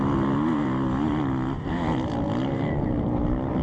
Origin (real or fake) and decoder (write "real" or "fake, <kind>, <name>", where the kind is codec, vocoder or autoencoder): real